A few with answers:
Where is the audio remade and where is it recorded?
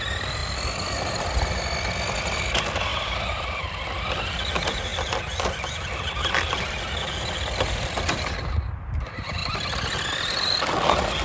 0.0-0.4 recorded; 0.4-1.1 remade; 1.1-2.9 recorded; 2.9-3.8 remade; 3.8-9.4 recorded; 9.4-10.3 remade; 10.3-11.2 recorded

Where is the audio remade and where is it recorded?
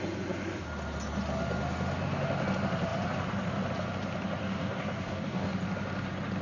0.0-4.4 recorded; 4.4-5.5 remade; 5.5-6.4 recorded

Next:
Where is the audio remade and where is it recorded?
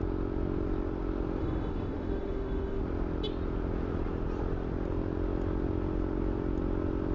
0.0-1.4 recorded; 1.4-2.8 remade; 2.8-7.1 recorded